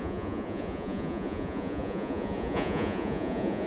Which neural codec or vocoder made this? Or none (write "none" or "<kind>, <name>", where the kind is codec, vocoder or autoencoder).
vocoder, Vocos